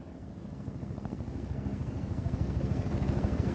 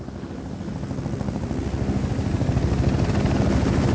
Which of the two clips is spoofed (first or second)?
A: first